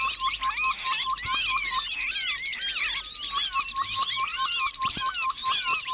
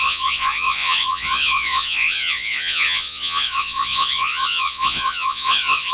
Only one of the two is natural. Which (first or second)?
first